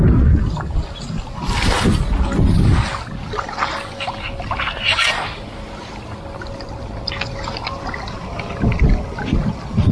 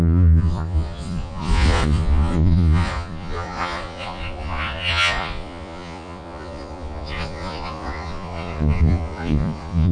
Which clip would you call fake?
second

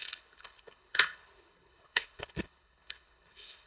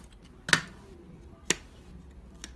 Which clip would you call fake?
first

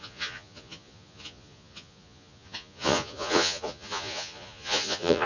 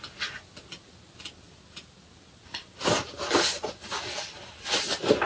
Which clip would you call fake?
first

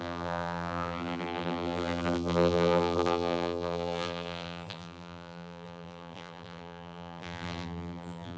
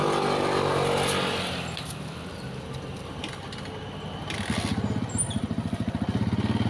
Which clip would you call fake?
first